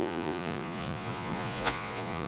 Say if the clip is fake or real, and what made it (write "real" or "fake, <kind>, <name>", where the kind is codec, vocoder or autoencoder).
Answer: fake, vocoder, Vocos